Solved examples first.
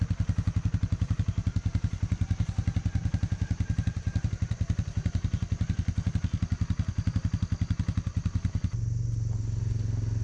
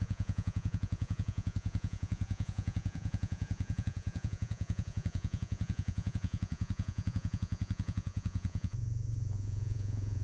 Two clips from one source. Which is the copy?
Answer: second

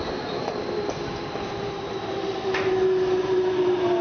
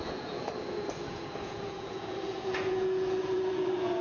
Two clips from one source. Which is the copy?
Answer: second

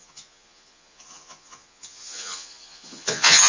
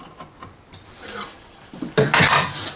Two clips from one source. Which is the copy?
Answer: first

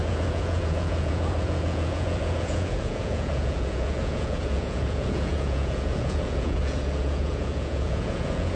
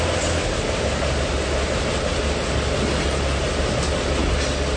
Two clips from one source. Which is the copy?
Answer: first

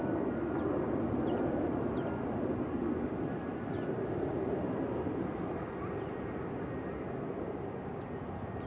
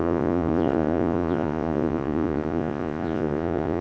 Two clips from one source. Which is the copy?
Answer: second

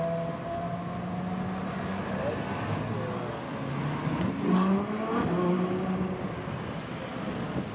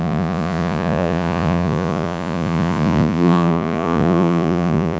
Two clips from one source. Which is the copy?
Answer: second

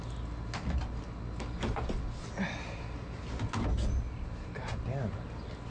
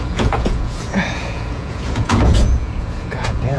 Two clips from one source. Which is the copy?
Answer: second